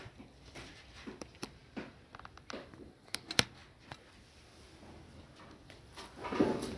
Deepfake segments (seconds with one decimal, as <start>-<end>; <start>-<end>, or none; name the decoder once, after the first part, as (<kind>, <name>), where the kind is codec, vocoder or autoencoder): 0.0-1.6 (vocoder, BigVGAN v2); 2.1-3.6; 5.5-6.8